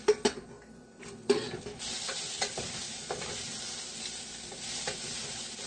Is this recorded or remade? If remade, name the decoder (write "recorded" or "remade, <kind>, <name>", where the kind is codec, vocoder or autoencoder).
recorded